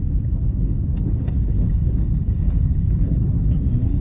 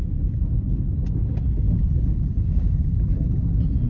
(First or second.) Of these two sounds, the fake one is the first